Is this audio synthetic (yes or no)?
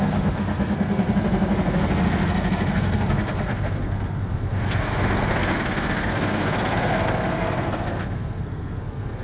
yes